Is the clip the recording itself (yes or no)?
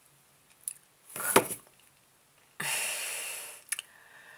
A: yes